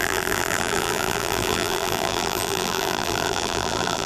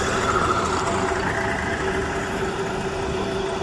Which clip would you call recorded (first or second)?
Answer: second